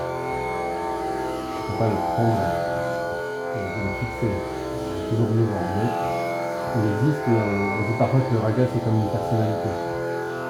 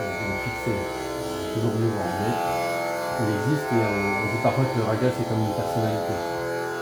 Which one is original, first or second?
second